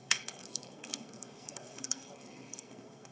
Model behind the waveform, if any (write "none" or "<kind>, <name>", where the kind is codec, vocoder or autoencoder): codec, SNAC